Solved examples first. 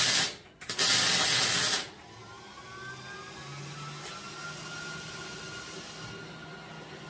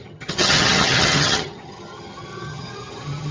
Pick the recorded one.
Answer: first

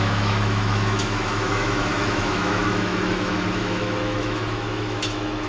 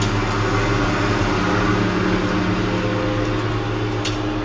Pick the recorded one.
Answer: second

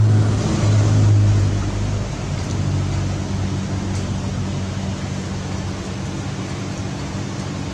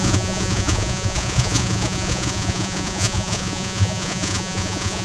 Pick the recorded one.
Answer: first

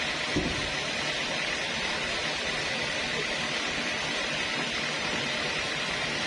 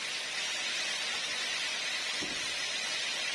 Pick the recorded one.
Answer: first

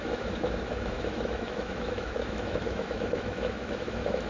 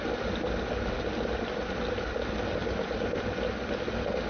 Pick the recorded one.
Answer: second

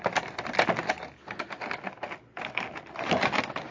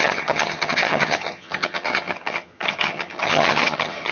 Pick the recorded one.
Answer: first